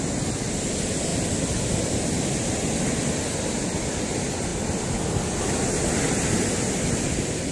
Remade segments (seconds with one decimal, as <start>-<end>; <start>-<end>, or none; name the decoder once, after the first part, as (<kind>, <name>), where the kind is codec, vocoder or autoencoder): none